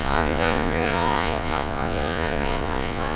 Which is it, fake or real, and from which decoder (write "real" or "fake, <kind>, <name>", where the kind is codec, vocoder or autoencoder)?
fake, vocoder, Vocos